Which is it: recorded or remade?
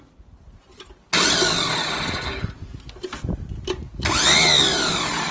recorded